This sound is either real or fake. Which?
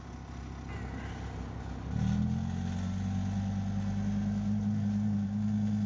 real